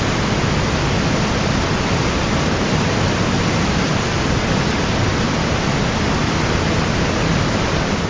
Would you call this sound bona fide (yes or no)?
yes